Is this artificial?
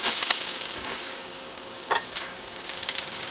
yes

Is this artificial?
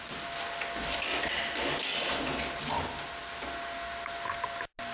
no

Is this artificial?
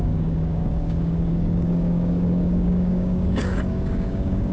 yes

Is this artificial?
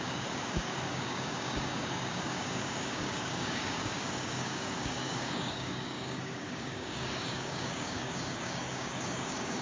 yes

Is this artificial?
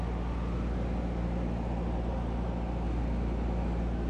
no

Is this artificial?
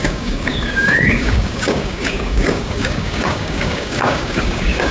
yes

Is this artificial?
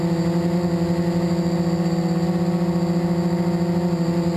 no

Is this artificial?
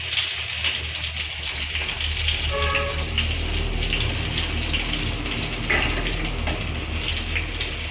no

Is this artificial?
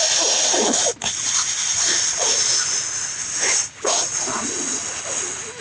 no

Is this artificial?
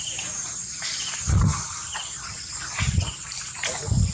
no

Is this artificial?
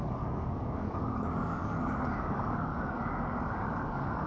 yes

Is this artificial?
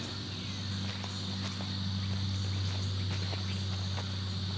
no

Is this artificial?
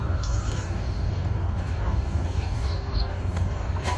yes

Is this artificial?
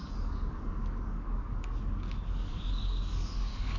yes